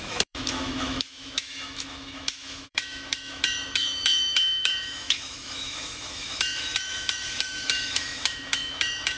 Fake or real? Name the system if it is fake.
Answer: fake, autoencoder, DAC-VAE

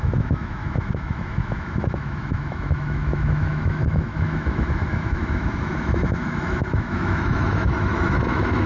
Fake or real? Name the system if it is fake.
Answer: fake, autoencoder, DAC-VAE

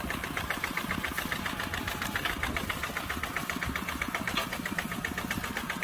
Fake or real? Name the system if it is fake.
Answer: real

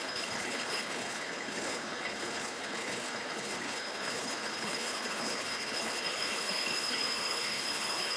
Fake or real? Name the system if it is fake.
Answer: fake, codec, HILCodec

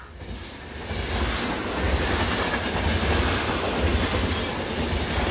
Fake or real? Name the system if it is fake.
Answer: real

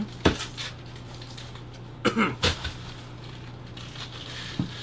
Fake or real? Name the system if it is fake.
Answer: real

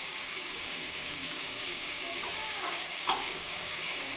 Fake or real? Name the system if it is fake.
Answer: fake, codec, DAC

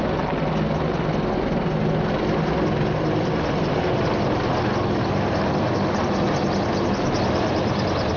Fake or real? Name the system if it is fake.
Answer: real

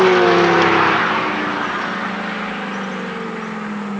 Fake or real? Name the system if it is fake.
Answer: real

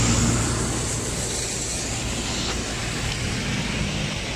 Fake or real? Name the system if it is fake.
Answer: real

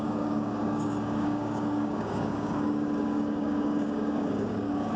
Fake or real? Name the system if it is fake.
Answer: fake, codec, DAC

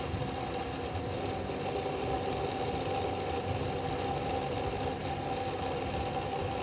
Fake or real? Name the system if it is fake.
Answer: real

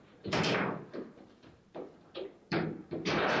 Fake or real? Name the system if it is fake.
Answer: fake, vocoder, BigVGAN v2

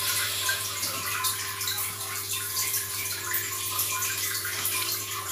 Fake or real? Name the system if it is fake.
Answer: fake, vocoder, BigVGAN v2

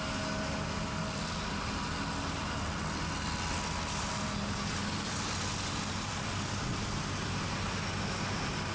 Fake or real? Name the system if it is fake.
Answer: real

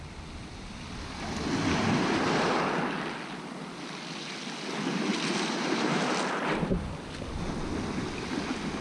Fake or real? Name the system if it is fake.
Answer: real